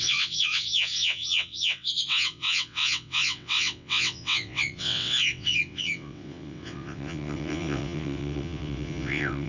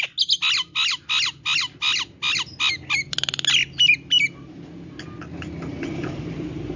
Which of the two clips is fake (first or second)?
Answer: first